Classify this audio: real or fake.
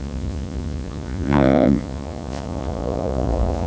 fake